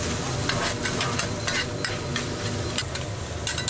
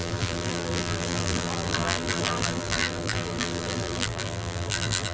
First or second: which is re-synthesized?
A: second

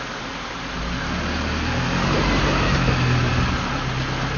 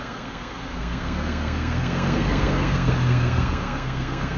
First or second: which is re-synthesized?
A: second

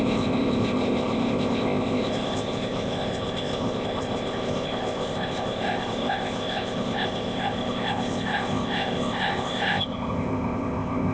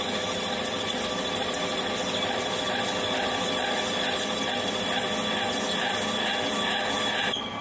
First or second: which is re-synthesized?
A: first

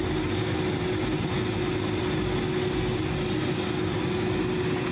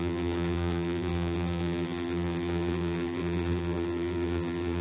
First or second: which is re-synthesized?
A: second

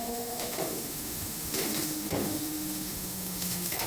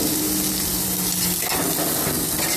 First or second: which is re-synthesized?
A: first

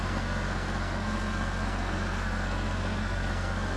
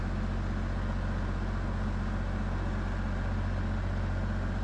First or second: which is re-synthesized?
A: first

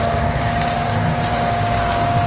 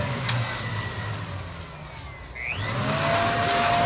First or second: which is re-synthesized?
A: first